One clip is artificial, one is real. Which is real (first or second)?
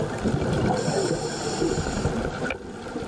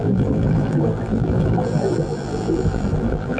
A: first